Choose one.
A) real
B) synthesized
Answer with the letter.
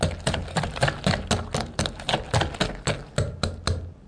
A